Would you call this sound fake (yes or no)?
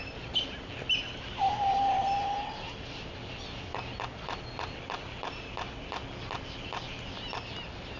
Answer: no